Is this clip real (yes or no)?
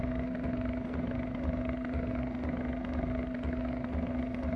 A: no